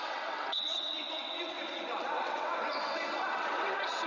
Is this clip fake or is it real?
fake